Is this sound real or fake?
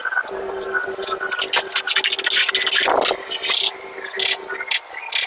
real